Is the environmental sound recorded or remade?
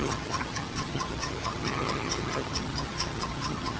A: remade